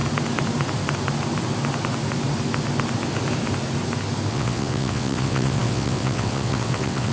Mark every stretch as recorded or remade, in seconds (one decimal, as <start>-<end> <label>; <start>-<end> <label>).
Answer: 0.0-4.3 recorded; 4.3-7.1 remade